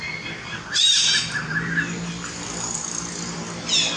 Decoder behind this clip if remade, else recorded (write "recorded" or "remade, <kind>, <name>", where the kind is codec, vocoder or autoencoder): recorded